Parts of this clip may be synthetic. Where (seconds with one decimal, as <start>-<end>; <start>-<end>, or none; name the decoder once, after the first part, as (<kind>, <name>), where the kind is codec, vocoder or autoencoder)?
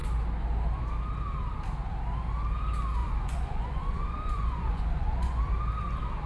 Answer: 3.0-5.4 (vocoder, Vocos)